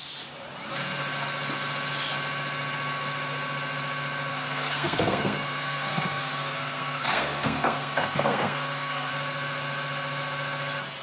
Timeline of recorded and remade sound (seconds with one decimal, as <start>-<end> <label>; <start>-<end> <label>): 0.0-4.3 recorded; 4.3-9.1 remade; 9.1-11.0 recorded